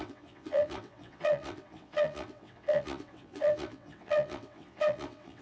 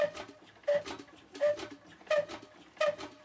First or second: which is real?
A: second